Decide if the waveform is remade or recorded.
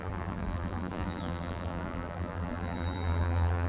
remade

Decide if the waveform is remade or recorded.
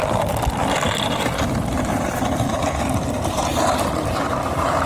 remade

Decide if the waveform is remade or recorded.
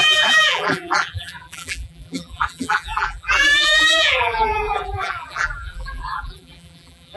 remade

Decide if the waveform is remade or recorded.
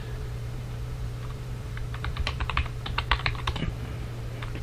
remade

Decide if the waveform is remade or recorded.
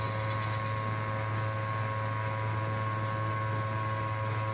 recorded